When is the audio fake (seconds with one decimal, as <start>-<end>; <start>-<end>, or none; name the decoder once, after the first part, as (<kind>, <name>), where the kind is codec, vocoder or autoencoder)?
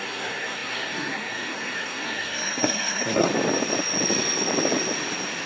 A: 0.0-3.3 (codec, SNAC)